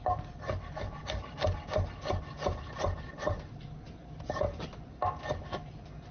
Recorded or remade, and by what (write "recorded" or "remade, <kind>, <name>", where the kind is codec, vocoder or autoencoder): recorded